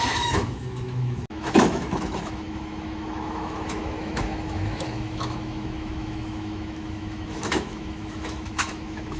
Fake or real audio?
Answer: fake